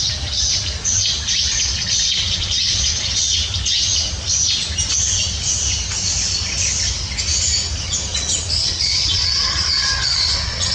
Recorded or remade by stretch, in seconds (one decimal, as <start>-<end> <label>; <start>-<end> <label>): 0.0-1.5 recorded; 1.5-3.0 remade; 3.0-8.1 recorded; 8.1-10.7 remade